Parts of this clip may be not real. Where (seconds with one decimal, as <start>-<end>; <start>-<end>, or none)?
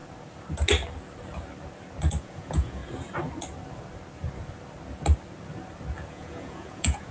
2.2-2.8; 6.1-7.1